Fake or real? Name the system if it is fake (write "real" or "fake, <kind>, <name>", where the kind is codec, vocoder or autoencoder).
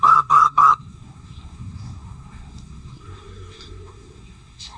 fake, codec, SNAC